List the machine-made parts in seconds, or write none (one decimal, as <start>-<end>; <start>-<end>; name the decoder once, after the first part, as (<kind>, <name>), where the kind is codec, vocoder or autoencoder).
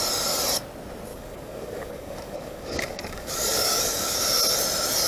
1.1-4.2 (codec, DAC)